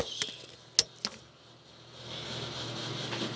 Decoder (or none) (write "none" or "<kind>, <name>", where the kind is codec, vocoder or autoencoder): none